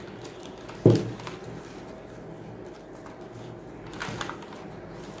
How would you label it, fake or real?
real